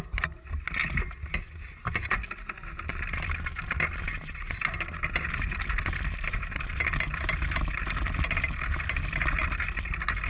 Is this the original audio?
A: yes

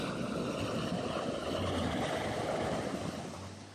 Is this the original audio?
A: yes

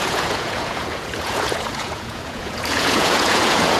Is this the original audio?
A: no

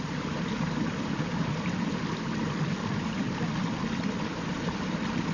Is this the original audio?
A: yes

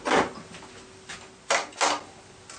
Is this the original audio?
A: yes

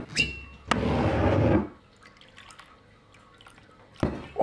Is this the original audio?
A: yes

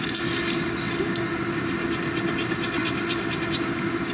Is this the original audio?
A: yes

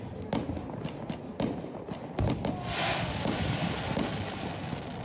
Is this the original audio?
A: yes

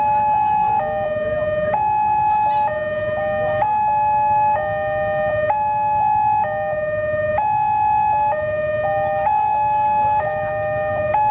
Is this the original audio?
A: yes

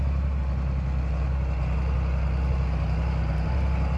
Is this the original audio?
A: yes